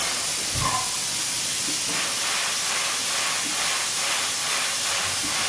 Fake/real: real